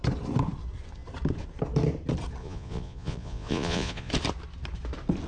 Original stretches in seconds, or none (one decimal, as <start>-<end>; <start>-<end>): 0.0-2.4; 4.1-5.3